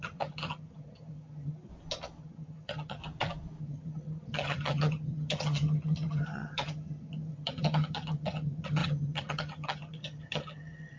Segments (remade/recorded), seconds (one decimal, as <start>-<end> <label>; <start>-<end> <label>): 0.0-1.7 remade; 1.7-2.2 recorded; 2.2-3.0 remade; 3.0-3.6 recorded; 3.6-11.0 remade